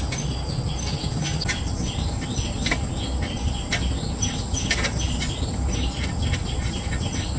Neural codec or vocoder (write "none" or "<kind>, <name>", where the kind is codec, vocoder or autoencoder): none